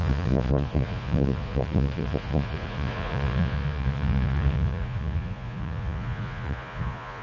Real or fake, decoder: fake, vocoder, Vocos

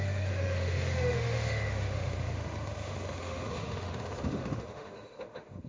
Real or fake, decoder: fake, autoencoder, DAC-VAE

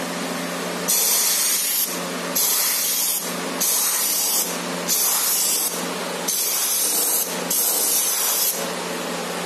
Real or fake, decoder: real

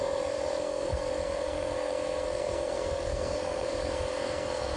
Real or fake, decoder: fake, codec, SNAC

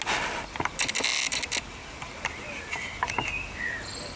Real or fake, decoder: real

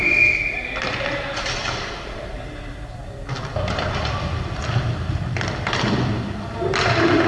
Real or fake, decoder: real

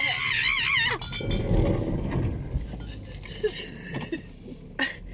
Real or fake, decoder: real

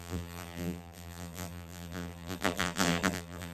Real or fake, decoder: fake, vocoder, BigVGAN v2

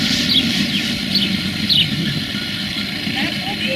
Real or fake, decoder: real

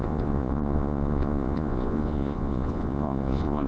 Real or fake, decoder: fake, vocoder, Vocos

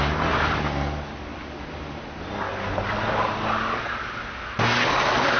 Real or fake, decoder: real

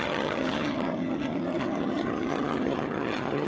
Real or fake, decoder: fake, vocoder, HiFi-GAN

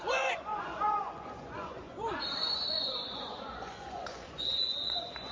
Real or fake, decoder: fake, vocoder, Vocos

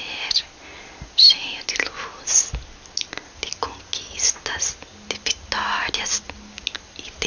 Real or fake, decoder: real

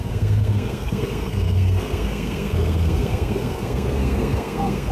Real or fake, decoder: fake, codec, SNAC